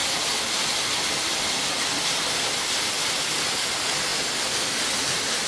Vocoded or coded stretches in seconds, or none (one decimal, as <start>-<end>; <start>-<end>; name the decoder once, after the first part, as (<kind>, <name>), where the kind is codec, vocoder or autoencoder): none